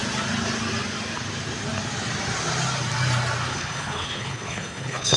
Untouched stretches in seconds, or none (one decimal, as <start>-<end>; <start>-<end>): 0.0-3.5